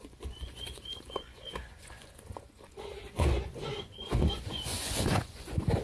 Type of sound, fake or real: fake